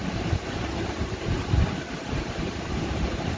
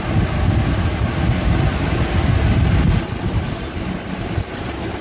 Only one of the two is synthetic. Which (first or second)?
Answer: first